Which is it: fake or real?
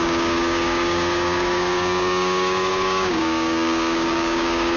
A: fake